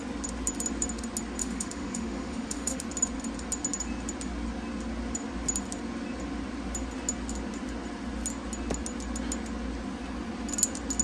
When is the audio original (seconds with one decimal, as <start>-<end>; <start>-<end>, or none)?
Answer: 0.0-1.4; 2.8-11.0